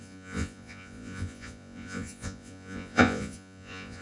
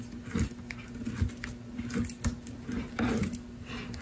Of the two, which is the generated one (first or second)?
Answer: first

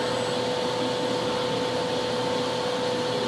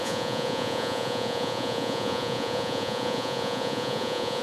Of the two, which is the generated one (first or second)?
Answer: second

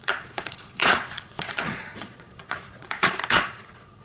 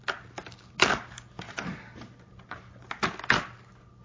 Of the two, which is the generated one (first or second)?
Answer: first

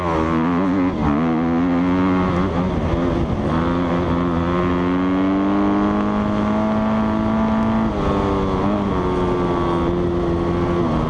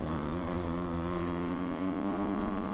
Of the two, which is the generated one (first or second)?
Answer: second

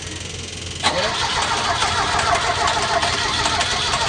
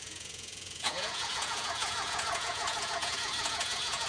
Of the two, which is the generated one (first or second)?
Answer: second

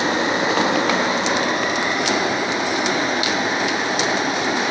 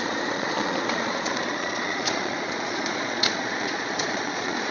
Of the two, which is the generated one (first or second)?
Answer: second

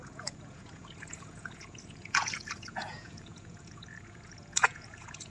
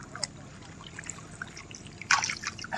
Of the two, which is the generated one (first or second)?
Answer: first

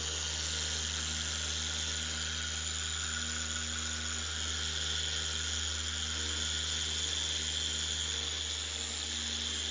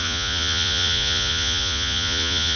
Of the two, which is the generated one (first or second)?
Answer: second